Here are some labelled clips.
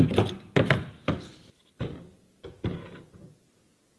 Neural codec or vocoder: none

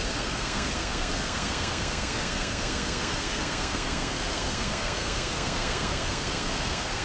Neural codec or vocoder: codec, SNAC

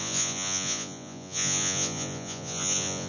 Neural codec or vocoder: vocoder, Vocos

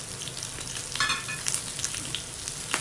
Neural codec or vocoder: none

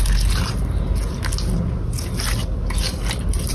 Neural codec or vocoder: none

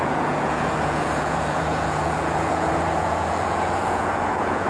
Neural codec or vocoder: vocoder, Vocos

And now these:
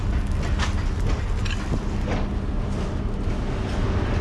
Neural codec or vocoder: none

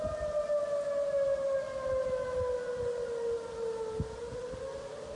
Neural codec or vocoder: none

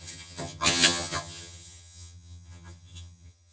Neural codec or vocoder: vocoder, HiFi-GAN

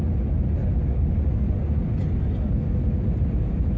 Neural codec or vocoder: none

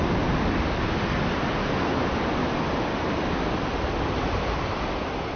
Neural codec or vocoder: none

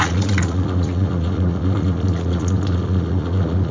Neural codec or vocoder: vocoder, Vocos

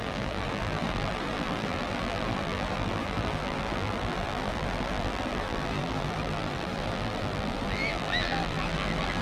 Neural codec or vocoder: vocoder, BigVGAN v2